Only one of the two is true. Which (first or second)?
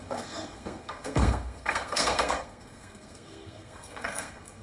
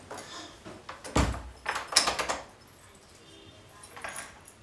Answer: second